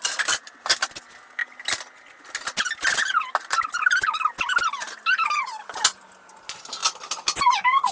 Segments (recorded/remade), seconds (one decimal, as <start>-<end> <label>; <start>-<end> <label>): 0.0-7.9 recorded